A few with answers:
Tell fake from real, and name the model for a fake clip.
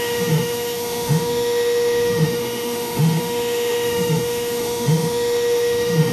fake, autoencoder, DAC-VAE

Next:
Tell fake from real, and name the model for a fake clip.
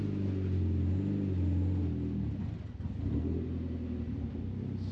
real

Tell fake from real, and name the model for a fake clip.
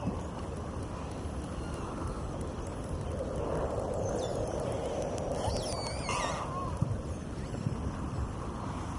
real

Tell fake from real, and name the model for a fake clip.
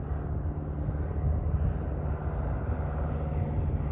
real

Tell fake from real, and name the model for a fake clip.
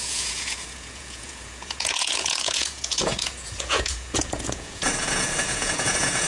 fake, vocoder, Vocos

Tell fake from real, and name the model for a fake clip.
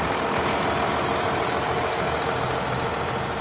real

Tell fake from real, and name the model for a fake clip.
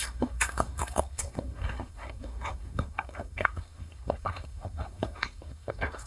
fake, codec, SNAC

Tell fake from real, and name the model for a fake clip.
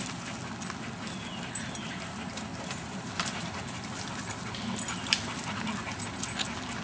real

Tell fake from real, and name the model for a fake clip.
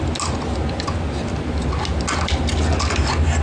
real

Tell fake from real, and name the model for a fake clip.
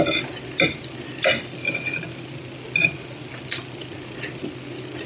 real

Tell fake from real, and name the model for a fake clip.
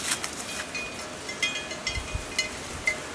real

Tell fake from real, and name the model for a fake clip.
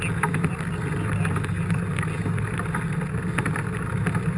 real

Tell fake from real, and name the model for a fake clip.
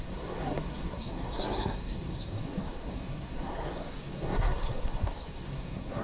fake, codec, SNAC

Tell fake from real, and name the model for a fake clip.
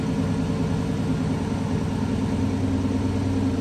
real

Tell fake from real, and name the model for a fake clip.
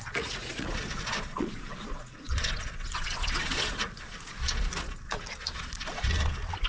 fake, vocoder, Vocos